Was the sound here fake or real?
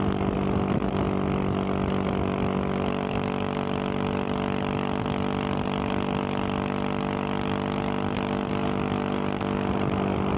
real